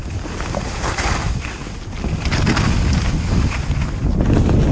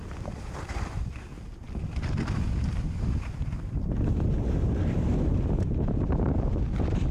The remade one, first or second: second